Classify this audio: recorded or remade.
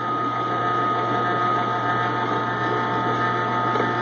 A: recorded